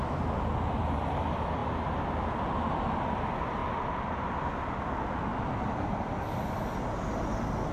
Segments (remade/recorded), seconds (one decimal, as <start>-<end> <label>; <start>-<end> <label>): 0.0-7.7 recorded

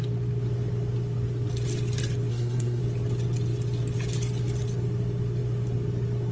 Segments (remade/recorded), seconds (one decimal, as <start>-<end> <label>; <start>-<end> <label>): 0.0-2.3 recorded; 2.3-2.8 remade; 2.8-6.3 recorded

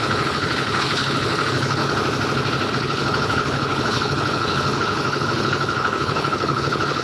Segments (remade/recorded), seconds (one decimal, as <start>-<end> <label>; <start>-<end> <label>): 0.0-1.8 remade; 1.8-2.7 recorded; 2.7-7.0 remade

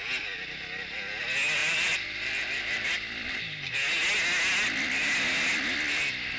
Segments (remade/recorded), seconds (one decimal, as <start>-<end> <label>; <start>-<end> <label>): 0.0-1.6 recorded; 1.6-3.7 remade; 3.7-6.4 recorded

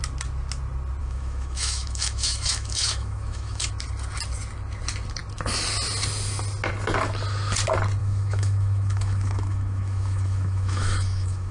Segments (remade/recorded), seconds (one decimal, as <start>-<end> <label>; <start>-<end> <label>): 0.0-1.0 recorded; 1.0-3.7 remade; 3.7-8.0 recorded; 8.0-11.5 remade